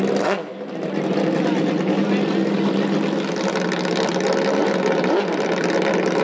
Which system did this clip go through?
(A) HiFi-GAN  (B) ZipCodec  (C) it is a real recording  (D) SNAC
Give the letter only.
C